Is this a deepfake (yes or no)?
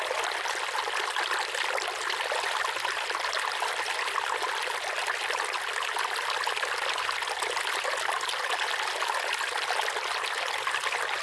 no